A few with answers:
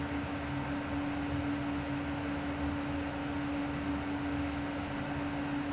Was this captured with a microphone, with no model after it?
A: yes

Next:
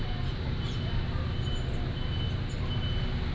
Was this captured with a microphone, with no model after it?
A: yes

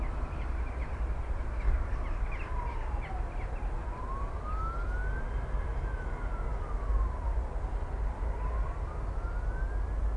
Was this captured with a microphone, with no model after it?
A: yes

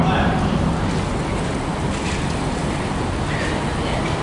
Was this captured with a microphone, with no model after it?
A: yes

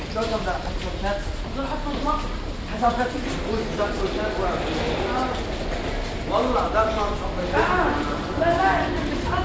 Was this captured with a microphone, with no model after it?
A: yes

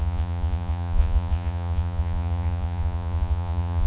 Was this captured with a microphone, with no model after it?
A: no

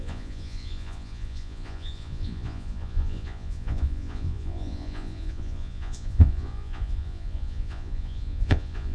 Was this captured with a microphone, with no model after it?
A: no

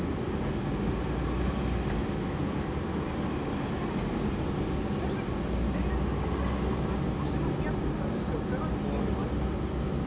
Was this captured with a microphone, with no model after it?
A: yes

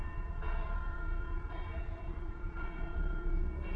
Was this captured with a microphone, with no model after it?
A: no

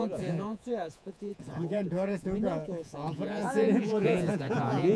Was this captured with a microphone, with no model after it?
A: no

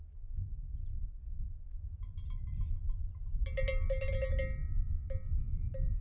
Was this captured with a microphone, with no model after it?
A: yes